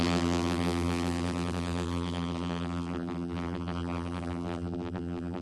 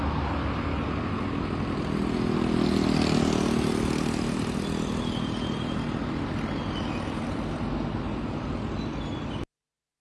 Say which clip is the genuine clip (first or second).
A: second